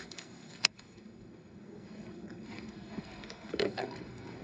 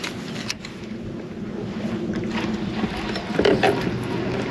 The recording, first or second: second